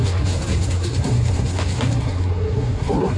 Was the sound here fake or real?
fake